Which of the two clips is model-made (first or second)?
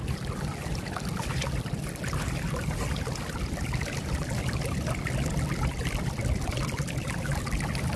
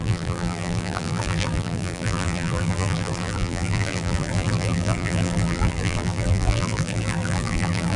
second